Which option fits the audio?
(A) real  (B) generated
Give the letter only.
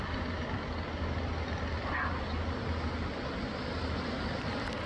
A